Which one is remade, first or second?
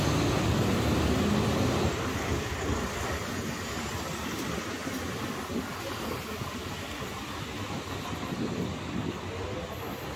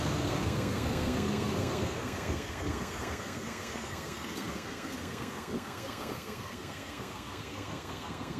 second